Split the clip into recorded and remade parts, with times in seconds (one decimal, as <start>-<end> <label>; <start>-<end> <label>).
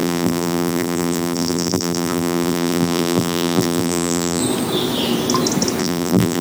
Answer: 0.0-4.4 remade; 4.4-5.8 recorded; 5.8-6.4 remade